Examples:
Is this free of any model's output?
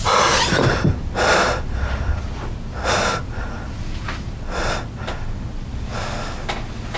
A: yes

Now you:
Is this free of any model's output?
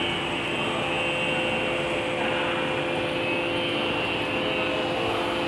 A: yes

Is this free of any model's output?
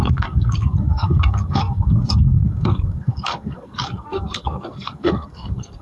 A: no